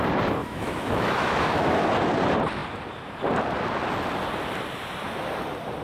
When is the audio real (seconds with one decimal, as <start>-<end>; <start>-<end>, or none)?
0.0-0.4; 1.9-5.8